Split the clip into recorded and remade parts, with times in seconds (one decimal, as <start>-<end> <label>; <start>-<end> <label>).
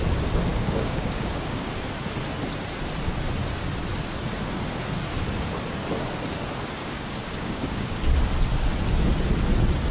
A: 0.0-0.5 recorded; 0.5-1.7 remade; 1.7-6.8 recorded; 6.8-8.0 remade; 8.0-9.9 recorded